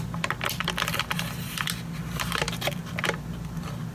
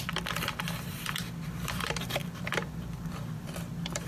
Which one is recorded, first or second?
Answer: first